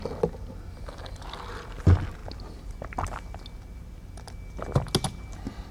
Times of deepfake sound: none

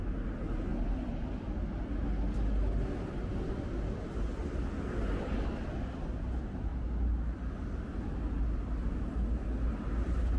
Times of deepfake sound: none

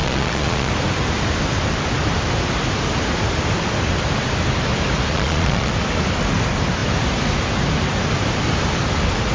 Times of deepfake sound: 0.0-0.7 (vocoder, Vocos); 5.1-5.7

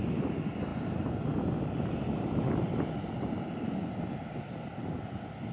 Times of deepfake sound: none